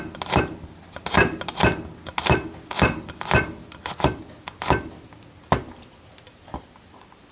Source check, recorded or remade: recorded